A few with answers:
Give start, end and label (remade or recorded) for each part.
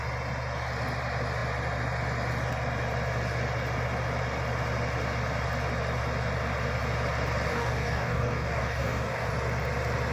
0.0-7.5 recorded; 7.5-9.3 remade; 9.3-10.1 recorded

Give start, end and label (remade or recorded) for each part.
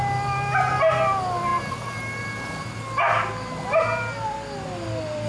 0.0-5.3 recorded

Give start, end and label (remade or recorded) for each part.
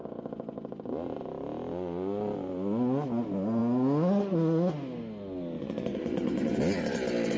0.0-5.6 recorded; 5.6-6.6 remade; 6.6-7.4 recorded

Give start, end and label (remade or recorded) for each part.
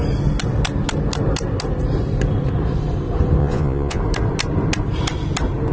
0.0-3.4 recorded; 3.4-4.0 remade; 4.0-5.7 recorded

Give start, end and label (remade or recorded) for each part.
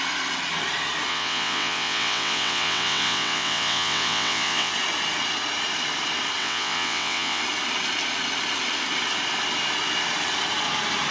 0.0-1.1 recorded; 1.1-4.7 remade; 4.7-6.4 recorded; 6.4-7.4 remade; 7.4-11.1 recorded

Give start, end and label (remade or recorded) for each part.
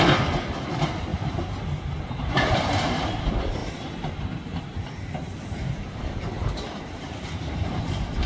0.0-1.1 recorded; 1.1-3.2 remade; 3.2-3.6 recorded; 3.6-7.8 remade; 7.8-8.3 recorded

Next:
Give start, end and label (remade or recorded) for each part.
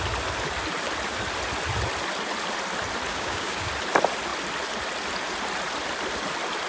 0.0-3.1 recorded; 3.1-3.7 remade; 3.7-6.7 recorded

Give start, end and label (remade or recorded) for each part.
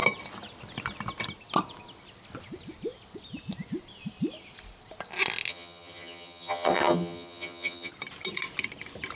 0.0-5.5 recorded; 5.5-7.9 remade; 7.9-9.2 recorded